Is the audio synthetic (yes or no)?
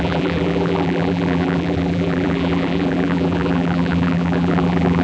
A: yes